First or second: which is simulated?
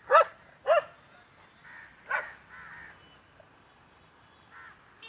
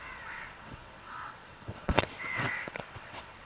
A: second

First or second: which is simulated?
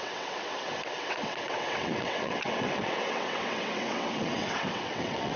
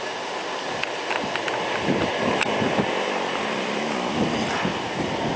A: first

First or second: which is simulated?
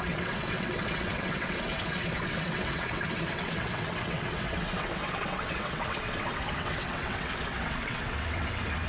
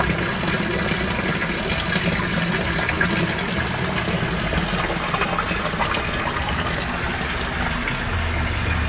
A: first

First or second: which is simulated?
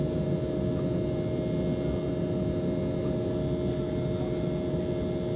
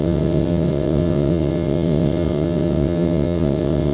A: second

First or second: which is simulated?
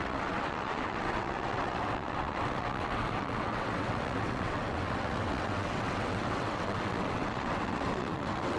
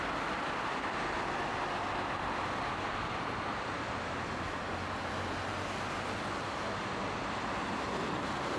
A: first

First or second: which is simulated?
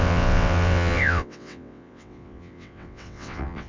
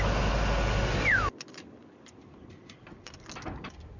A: first